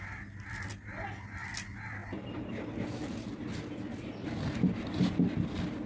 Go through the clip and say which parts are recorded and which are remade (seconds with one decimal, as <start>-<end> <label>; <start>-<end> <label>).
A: 0.0-5.9 recorded